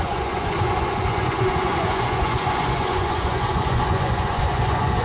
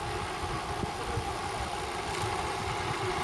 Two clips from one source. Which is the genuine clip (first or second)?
second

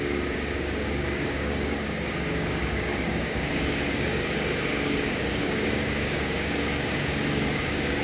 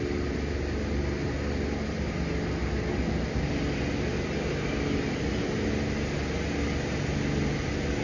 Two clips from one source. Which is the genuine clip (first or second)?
second